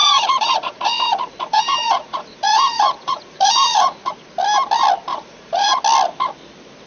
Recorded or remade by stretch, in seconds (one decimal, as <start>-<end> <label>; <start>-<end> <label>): 0.0-4.1 remade; 4.1-5.1 recorded; 5.1-5.8 remade; 5.8-6.9 recorded